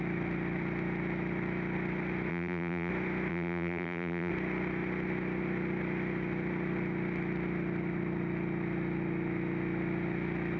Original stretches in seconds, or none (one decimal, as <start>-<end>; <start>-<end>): 0.0-2.3; 2.9-3.3; 4.3-10.6